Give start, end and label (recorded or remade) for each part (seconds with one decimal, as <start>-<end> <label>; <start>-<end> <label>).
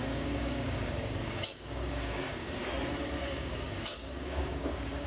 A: 0.0-2.6 remade; 2.6-3.2 recorded; 3.2-5.1 remade